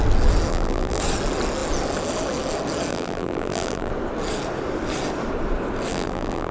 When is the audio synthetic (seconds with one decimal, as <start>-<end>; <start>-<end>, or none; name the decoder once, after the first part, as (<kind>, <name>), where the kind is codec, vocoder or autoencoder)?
0.5-1.0 (vocoder, BigVGAN v2); 2.9-3.9; 5.9-6.5